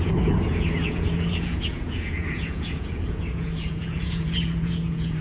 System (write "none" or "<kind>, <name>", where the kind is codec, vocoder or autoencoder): vocoder, Vocos